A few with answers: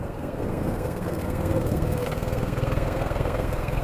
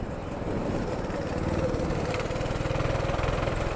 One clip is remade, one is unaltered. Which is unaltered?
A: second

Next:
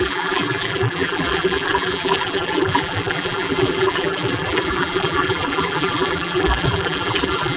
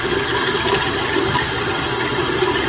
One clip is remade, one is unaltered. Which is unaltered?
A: second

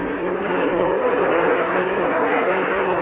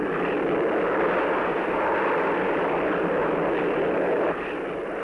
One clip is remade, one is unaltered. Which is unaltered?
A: second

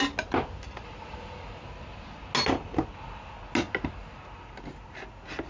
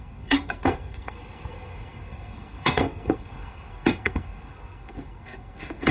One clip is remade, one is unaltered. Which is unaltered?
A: first